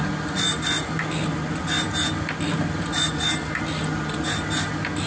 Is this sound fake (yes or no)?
no